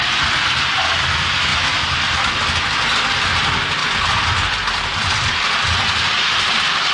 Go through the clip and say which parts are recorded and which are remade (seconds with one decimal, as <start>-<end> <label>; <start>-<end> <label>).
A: 0.0-6.9 recorded